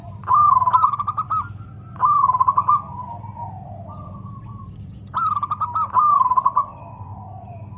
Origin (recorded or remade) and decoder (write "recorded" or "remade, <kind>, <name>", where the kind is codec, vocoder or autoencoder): remade, vocoder, BigVGAN v2